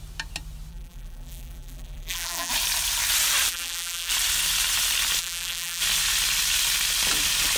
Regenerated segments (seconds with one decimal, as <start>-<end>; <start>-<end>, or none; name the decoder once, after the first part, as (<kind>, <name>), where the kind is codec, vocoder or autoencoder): 0.7-2.5 (vocoder, BigVGAN v2); 3.5-4.1; 5.2-5.8